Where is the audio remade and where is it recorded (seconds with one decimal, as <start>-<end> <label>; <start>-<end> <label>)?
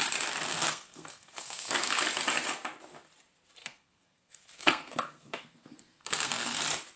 0.0-0.5 recorded; 0.5-2.0 remade; 2.0-3.6 recorded; 3.6-6.6 remade; 6.6-7.0 recorded